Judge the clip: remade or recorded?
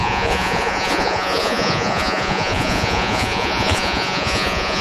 remade